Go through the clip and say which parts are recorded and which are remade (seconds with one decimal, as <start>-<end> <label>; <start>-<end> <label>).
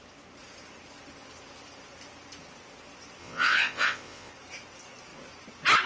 0.0-3.2 recorded; 3.2-4.3 remade; 4.3-5.9 recorded